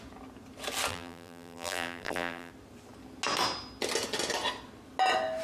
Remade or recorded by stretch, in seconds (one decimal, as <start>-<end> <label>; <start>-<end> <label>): 0.0-0.9 recorded; 0.9-2.5 remade; 2.5-5.4 recorded